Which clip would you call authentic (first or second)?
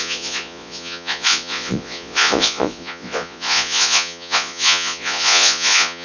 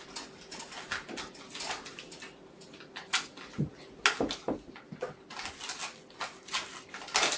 second